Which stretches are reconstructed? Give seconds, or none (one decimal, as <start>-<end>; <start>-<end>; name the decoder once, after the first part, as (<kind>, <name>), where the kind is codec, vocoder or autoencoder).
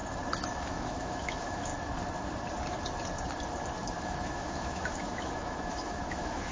0.5-1.7 (autoencoder, DAC-VAE); 4.0-6.5